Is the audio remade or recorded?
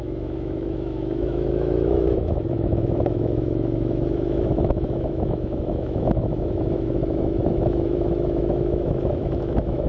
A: remade